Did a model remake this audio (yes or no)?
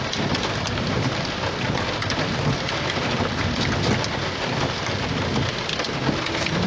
yes